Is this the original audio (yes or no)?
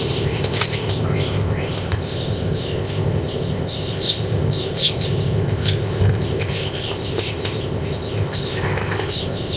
no